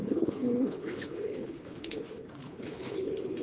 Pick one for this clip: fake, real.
fake